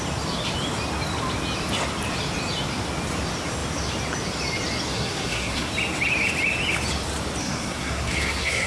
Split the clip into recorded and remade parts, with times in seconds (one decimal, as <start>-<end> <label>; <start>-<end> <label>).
0.0-4.9 recorded; 4.9-5.7 remade; 5.7-7.4 recorded; 7.4-8.7 remade